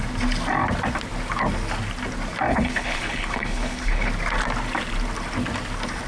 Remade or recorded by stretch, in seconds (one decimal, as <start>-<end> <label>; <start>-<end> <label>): 0.0-2.5 recorded; 2.5-4.1 remade; 4.1-6.1 recorded